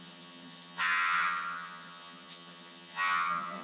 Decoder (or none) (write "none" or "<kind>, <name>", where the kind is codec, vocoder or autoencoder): vocoder, HiFi-GAN